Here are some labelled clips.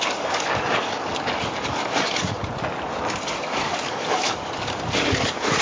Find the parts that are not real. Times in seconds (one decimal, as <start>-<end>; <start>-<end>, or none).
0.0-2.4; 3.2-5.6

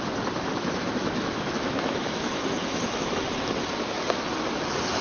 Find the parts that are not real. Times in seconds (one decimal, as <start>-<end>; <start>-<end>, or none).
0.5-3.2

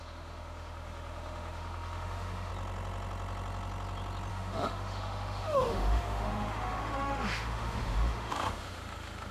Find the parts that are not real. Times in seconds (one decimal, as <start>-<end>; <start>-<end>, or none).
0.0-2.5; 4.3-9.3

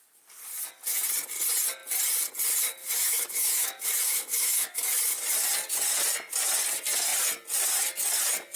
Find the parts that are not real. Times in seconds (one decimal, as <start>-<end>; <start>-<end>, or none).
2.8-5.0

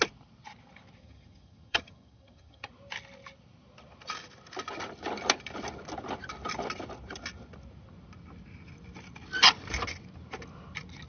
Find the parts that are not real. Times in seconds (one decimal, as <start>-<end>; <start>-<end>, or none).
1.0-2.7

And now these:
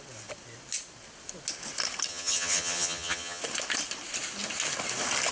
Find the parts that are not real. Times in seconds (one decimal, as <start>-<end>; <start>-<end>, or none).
2.1-3.4